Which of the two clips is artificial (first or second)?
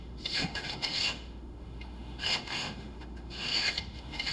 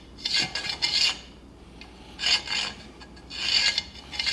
first